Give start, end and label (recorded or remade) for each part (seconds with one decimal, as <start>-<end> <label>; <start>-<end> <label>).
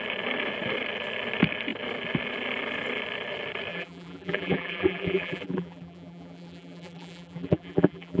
0.0-3.7 recorded; 3.7-8.2 remade